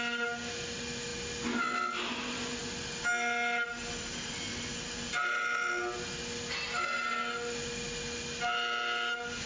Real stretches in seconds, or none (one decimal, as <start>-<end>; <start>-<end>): 0.0-9.5